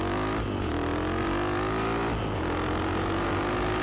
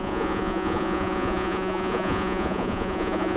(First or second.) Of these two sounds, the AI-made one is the second